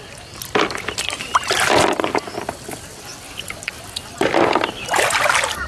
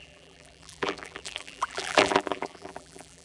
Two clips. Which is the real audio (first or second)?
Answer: first